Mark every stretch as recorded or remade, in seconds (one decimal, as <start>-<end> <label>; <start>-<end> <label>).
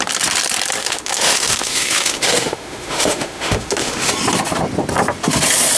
0.0-0.8 recorded; 0.8-4.1 remade; 4.1-5.8 recorded